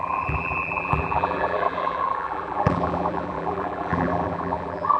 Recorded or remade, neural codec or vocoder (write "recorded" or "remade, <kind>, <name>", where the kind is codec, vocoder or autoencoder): remade, vocoder, BigVGAN v2